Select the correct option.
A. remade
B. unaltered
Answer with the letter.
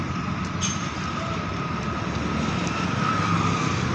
B